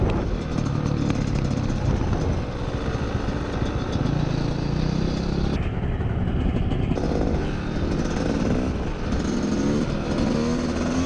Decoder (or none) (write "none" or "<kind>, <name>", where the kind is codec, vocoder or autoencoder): none